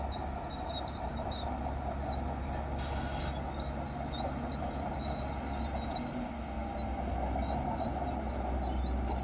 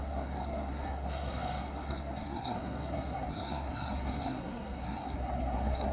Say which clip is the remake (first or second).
second